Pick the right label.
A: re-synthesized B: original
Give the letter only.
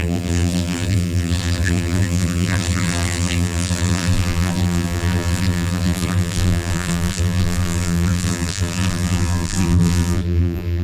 A